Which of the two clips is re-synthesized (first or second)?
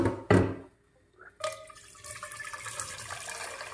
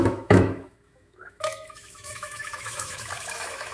second